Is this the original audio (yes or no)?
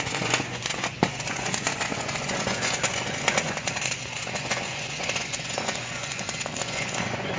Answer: no